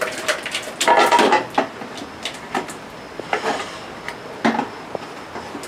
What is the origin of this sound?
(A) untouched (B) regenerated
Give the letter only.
A